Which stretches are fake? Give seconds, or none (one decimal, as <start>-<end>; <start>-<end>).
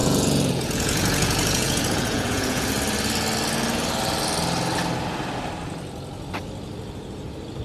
0.0-2.7